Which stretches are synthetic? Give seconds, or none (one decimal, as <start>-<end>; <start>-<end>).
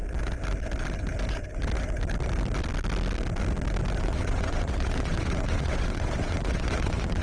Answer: 4.0-7.2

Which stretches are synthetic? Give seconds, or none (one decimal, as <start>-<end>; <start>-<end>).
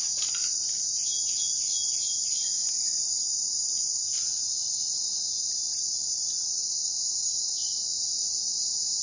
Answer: 1.8-3.1; 3.6-7.5